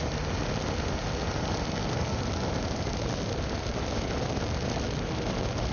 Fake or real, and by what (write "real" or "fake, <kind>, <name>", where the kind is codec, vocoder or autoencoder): real